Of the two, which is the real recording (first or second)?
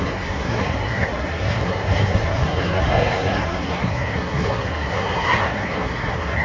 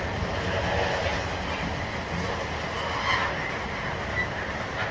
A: second